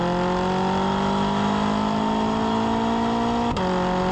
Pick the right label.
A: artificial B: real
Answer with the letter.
B